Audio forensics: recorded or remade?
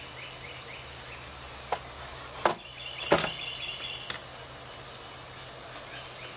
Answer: recorded